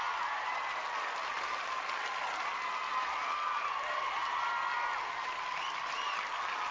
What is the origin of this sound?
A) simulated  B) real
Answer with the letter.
B